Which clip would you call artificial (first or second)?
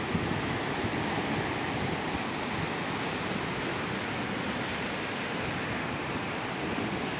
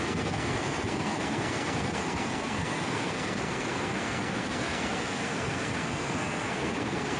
second